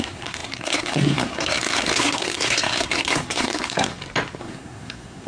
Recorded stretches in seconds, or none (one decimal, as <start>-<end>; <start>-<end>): 3.9-4.4